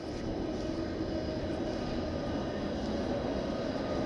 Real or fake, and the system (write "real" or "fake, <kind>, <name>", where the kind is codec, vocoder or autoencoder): real